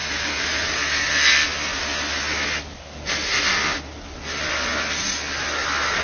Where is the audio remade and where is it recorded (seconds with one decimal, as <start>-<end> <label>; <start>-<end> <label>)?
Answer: 0.0-1.1 remade; 1.1-6.0 recorded